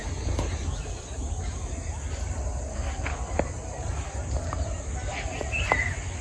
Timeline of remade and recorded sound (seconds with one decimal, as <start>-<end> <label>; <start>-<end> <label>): 0.0-6.2 recorded